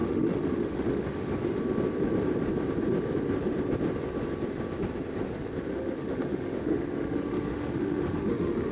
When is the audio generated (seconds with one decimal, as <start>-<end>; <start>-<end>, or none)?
0.0-1.3; 5.7-8.7